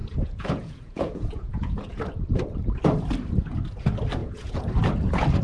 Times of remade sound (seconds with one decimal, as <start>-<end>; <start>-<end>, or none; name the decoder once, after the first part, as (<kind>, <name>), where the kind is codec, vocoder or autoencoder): 0.0-2.0 (vocoder, Vocos); 4.2-4.7